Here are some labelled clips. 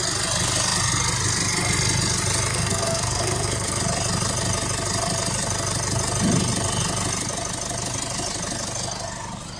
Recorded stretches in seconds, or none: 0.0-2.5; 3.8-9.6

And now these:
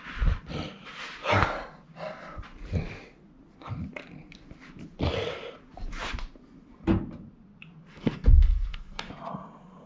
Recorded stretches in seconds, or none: 0.0-7.9; 9.1-9.9

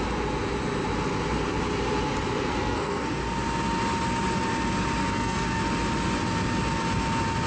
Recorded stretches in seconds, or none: 0.0-2.5; 3.2-5.0; 5.6-7.5

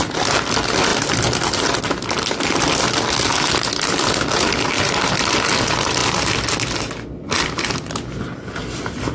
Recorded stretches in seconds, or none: 0.0-9.1

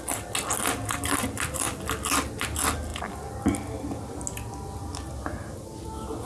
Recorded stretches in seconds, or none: 0.0-6.3